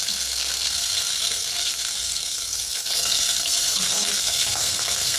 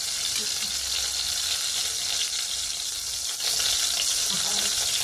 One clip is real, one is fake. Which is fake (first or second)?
first